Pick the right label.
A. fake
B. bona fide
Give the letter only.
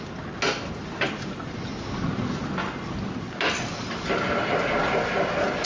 B